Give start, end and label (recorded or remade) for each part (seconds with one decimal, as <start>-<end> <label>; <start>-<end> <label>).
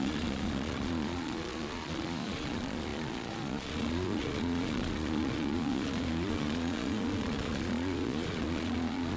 0.0-9.2 remade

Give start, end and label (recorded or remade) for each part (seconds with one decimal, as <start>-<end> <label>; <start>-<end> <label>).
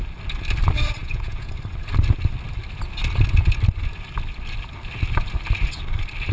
0.0-1.0 recorded; 1.0-1.5 remade; 1.5-6.3 recorded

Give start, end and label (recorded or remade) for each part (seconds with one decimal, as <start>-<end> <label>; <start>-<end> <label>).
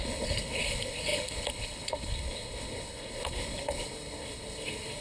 0.0-5.0 remade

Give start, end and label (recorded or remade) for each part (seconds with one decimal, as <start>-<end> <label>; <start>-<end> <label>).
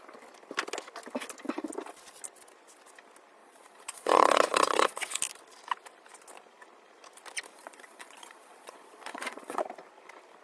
0.0-3.4 recorded; 3.4-5.2 remade; 5.2-7.5 recorded; 7.5-9.6 remade; 9.6-10.4 recorded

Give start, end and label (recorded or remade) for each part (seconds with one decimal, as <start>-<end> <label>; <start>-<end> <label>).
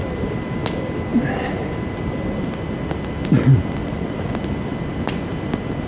0.0-3.8 recorded; 3.8-4.3 remade; 4.3-5.9 recorded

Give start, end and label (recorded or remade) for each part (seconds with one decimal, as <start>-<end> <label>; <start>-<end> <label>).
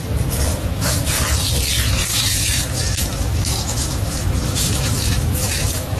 0.0-0.5 recorded; 0.5-1.1 remade; 1.1-2.1 recorded; 2.1-6.0 remade